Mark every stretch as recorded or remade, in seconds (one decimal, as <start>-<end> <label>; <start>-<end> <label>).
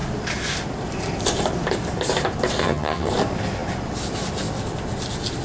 0.0-2.6 recorded; 2.6-3.1 remade; 3.1-5.4 recorded